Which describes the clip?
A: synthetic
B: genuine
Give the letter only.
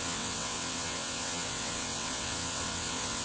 A